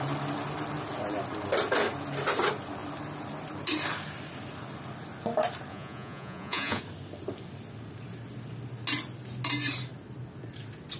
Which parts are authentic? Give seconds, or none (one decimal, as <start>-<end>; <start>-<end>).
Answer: 0.0-5.7; 6.8-11.0